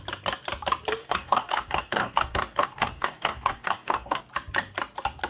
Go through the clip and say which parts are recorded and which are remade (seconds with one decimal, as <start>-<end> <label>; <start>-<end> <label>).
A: 0.0-1.0 recorded; 1.0-4.2 remade; 4.2-5.3 recorded